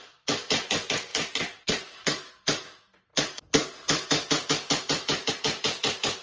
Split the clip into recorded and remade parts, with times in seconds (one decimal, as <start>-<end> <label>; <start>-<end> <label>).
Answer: 0.0-1.1 recorded; 1.1-2.3 remade; 2.3-6.2 recorded